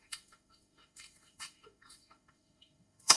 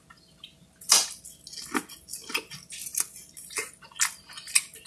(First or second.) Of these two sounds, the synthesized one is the first